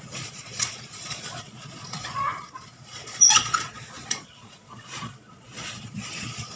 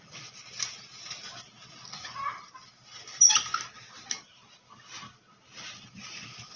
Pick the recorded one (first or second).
second